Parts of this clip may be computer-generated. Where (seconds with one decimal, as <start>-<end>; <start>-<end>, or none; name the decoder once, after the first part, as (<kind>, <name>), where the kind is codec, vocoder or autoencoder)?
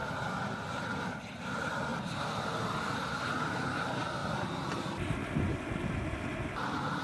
4.2-4.8 (vocoder, BigVGAN v2)